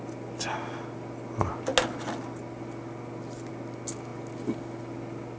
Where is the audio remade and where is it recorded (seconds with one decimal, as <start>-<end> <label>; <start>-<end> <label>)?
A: 0.0-5.4 recorded